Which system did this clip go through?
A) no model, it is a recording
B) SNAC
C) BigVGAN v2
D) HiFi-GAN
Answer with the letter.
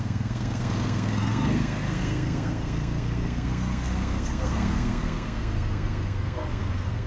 B